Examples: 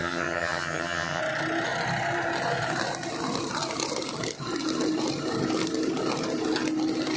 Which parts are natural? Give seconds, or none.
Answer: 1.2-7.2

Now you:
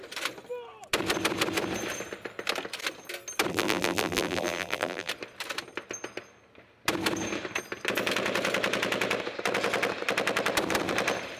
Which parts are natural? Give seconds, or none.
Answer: 0.0-3.5; 5.1-11.4

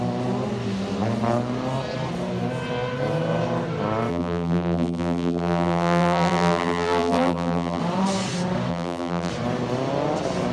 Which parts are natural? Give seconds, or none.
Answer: 0.0-4.1; 7.8-8.7; 9.3-10.5

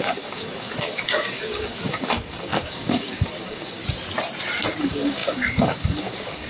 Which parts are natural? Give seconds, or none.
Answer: 3.8-4.8

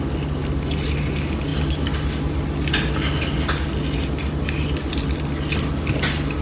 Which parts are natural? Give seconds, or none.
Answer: 0.0-6.4

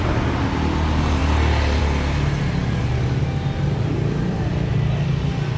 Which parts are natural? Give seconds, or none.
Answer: 0.0-5.6

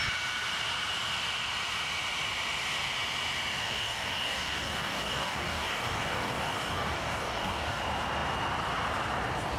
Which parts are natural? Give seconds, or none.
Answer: 0.0-3.6; 7.8-9.6

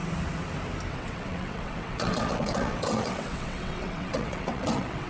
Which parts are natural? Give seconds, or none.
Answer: 0.0-0.9